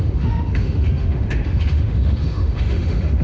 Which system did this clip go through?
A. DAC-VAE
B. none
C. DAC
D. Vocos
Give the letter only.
A